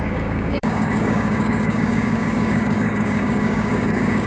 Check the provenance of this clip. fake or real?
fake